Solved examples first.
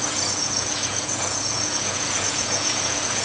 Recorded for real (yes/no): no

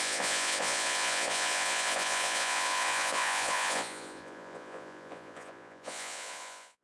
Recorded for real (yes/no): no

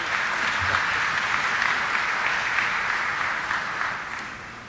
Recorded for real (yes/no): yes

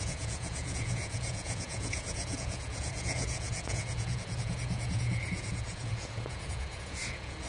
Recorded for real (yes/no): no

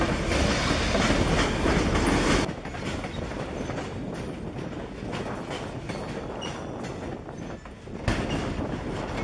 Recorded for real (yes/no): yes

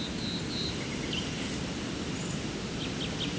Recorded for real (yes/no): yes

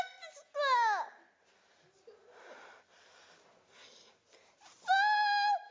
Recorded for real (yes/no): yes